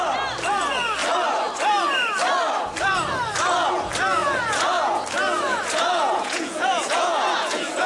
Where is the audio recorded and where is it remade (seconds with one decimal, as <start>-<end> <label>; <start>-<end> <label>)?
0.0-4.2 recorded; 4.2-5.0 remade; 5.0-5.5 recorded; 5.5-7.9 remade

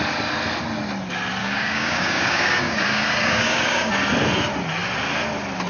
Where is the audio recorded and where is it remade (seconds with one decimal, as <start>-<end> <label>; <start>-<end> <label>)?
0.0-1.4 recorded; 1.4-3.9 remade; 3.9-5.7 recorded

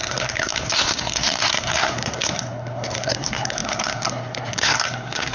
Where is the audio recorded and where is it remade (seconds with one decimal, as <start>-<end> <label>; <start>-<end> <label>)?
0.0-5.3 remade

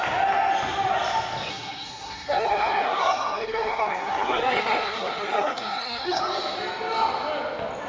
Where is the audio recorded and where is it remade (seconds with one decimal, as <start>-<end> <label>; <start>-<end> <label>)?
0.0-1.5 recorded; 1.5-6.2 remade; 6.2-7.9 recorded

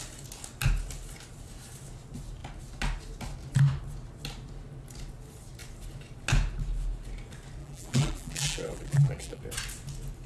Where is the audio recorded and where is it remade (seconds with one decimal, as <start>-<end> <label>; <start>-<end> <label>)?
0.0-7.6 recorded; 7.6-9.4 remade; 9.4-10.3 recorded

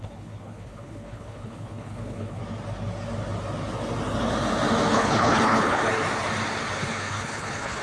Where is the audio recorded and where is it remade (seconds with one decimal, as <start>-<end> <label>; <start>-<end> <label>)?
0.0-2.4 remade; 2.4-4.9 recorded; 4.9-5.8 remade; 5.8-6.8 recorded; 6.8-7.8 remade

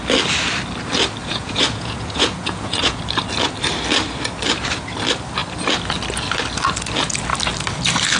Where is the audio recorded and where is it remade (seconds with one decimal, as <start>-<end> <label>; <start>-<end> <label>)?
0.0-1.2 recorded; 1.2-3.0 remade; 3.0-8.2 recorded